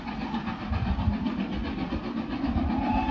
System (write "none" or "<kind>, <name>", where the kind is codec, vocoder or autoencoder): none